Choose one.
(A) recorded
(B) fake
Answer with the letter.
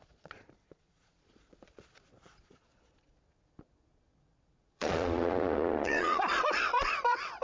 B